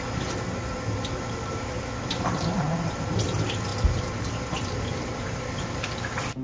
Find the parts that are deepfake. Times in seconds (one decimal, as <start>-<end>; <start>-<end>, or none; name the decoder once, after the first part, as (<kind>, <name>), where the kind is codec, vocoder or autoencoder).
none